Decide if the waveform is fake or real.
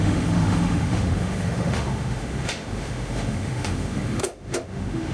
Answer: fake